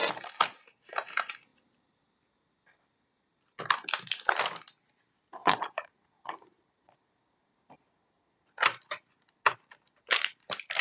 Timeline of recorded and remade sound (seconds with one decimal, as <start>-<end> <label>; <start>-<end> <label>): 0.0-5.4 recorded; 5.4-6.9 remade; 6.9-10.8 recorded